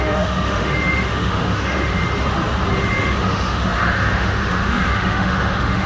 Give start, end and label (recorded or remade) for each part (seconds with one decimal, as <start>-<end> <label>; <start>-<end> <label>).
0.0-2.0 remade; 2.0-2.8 recorded; 2.8-5.9 remade